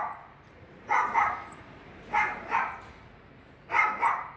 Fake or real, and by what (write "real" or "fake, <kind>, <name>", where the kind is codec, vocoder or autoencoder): fake, vocoder, BigVGAN v2